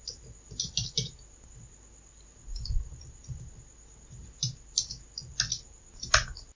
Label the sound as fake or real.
real